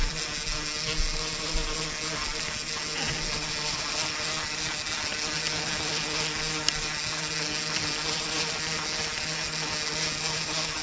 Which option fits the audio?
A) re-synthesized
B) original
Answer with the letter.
B